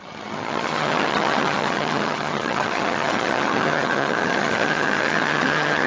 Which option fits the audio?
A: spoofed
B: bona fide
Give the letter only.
A